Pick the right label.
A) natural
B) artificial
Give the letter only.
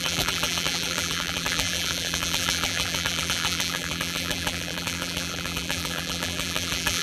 B